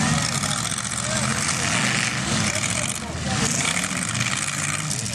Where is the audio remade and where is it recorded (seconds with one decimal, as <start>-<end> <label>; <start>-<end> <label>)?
0.0-5.1 recorded